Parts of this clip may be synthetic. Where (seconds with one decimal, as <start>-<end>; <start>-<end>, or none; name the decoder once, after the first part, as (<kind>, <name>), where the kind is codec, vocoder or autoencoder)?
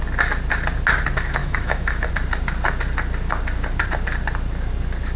1.4-2.1 (autoencoder, DAC-VAE)